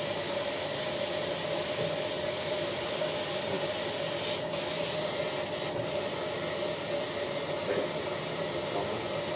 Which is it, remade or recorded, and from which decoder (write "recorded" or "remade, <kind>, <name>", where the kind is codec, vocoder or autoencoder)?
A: recorded